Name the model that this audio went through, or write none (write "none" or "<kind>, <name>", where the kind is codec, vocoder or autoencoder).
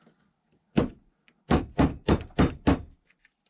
none